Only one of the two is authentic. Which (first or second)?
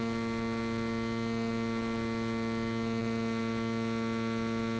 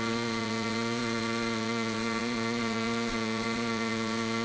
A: first